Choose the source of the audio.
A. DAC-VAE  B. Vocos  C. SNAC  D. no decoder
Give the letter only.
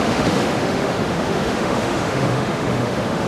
A